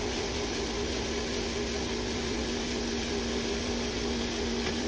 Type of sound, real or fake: real